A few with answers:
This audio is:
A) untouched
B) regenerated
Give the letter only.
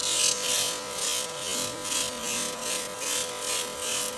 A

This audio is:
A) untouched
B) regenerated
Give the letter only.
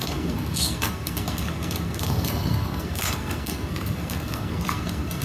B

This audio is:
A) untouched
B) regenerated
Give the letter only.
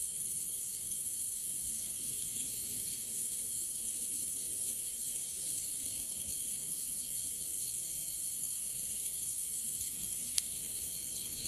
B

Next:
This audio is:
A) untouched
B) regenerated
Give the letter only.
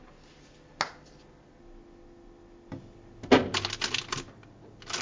A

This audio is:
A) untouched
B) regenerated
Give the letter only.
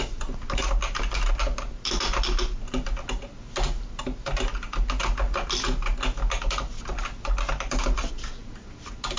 A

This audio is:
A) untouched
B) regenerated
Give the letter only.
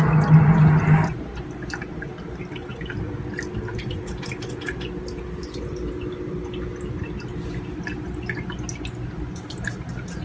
A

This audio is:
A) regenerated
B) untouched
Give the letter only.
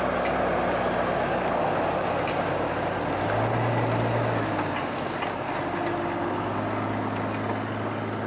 B